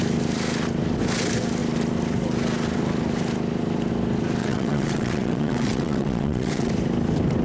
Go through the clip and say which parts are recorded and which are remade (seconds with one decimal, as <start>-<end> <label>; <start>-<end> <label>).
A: 0.0-4.4 recorded; 4.4-6.7 remade; 6.7-7.4 recorded